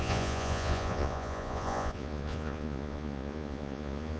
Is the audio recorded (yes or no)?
no